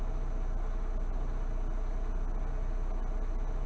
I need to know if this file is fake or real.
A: real